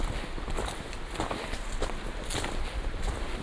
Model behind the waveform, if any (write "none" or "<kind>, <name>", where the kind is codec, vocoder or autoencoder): none